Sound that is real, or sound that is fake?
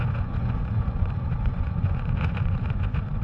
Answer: fake